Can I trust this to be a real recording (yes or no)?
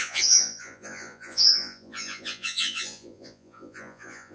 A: no